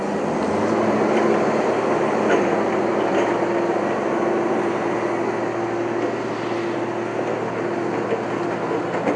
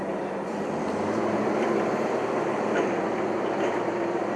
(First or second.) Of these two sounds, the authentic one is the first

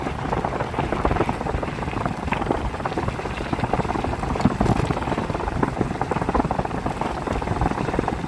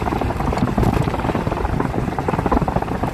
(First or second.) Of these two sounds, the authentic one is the first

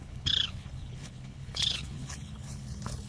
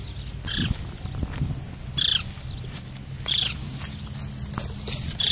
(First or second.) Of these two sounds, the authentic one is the second